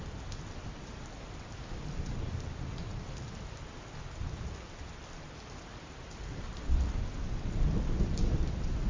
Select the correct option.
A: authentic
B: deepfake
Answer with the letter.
B